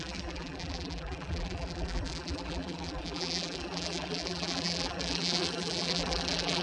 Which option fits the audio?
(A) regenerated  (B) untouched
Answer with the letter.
A